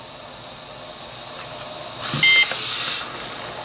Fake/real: real